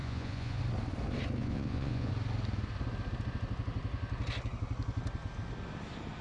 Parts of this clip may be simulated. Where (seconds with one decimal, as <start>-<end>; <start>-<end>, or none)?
0.0-0.6; 1.4-2.1